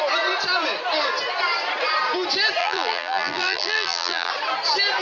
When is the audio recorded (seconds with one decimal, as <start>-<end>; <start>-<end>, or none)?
0.0-2.6; 4.3-5.0